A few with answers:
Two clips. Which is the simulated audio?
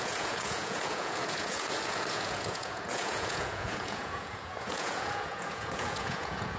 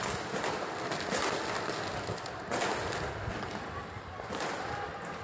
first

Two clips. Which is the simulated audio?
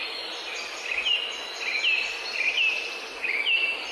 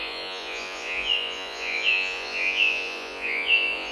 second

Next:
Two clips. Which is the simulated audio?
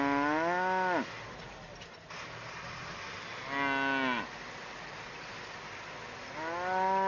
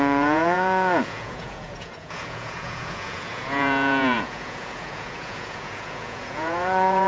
second